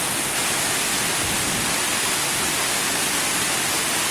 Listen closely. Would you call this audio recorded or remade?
recorded